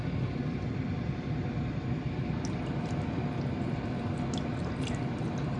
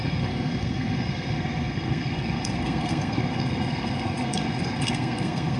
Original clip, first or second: first